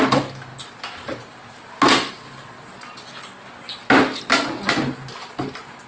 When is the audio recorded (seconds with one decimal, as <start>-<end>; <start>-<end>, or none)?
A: 0.0-5.9